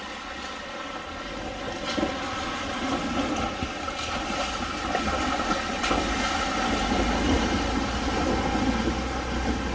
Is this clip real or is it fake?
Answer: real